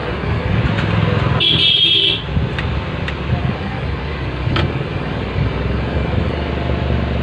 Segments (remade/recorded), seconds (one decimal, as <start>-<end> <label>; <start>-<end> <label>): 0.0-0.6 remade; 0.6-3.4 recorded; 3.4-6.5 remade; 6.5-7.2 recorded

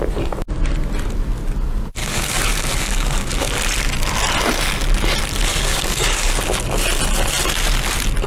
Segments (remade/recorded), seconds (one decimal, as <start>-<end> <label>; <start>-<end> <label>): 0.0-2.0 recorded; 2.0-3.5 remade; 3.5-5.5 recorded; 5.5-6.4 remade; 6.4-8.3 recorded

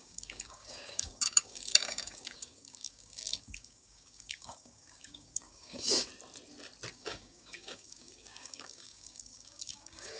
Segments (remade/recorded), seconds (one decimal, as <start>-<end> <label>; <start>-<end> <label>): 0.0-6.1 remade; 6.1-6.9 recorded; 6.9-10.2 remade

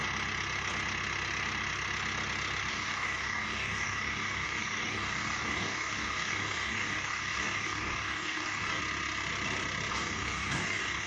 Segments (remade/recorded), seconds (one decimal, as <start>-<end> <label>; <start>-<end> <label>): 0.0-2.7 recorded; 2.7-8.8 remade; 8.8-9.9 recorded; 9.9-11.1 remade

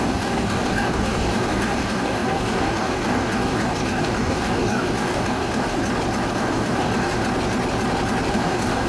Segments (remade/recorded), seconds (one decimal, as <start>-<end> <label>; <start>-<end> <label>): 0.0-5.8 remade; 5.8-6.3 recorded; 6.3-7.2 remade; 7.2-8.3 recorded; 8.3-8.9 remade

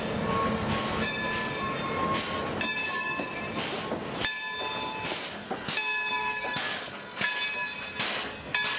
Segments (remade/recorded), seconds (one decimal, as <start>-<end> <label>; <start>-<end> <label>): 0.0-2.8 recorded; 2.8-3.4 remade; 3.4-6.2 recorded; 6.2-7.3 remade; 7.3-8.8 recorded

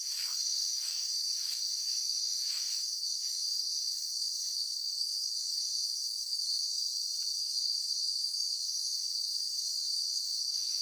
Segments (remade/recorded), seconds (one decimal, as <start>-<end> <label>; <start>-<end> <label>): 0.0-6.8 remade; 6.8-7.4 recorded; 7.4-10.8 remade